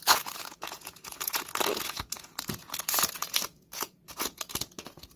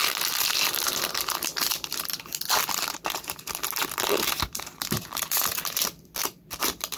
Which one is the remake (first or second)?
first